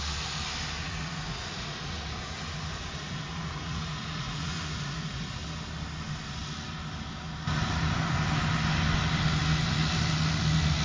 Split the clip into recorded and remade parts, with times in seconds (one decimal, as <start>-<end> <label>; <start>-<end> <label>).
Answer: 0.0-0.8 recorded; 0.8-5.4 remade; 5.4-10.8 recorded